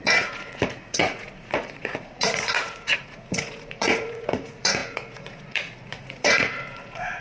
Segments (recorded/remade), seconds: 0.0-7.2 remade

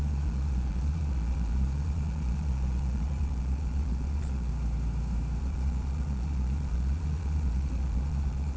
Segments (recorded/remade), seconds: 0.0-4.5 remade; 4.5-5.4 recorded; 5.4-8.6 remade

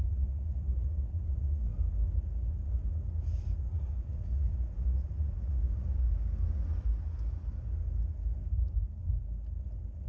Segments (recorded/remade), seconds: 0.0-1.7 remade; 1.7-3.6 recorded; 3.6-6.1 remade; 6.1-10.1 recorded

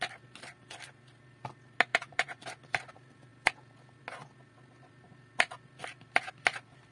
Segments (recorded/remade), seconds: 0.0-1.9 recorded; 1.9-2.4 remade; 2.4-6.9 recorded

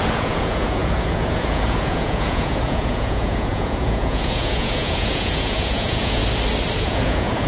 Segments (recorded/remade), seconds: 0.0-6.2 remade; 6.2-6.8 recorded; 6.8-7.5 remade